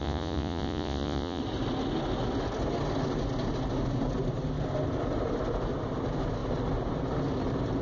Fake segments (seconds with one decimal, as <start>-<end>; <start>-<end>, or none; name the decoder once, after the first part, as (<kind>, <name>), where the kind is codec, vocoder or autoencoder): 0.0-1.4 (vocoder, Vocos)